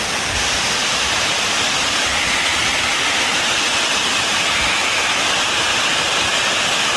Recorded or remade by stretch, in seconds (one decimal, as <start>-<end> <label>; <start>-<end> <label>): 0.0-2.5 recorded; 2.5-3.4 remade; 3.4-7.0 recorded